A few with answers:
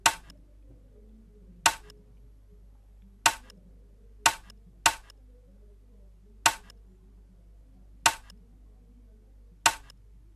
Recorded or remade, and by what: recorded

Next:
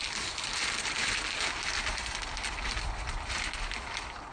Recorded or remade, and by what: recorded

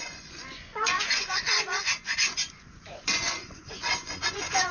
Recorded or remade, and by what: remade, vocoder, Vocos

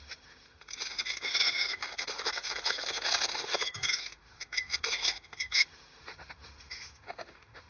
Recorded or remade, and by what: remade, autoencoder, DAC-VAE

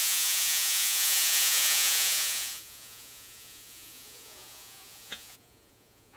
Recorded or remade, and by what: remade, vocoder, Vocos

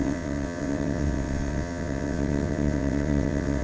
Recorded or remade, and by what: remade, vocoder, WaveNeXt